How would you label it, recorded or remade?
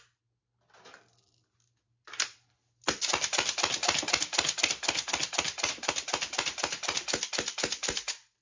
recorded